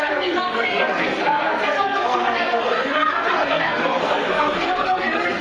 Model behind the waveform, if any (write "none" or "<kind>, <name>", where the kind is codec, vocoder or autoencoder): codec, SNAC